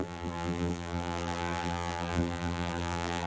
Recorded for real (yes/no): no